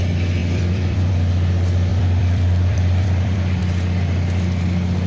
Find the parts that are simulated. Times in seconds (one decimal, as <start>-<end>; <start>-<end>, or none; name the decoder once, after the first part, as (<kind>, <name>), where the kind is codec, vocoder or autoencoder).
0.4-1.1 (vocoder, BigVGAN v2); 1.9-3.6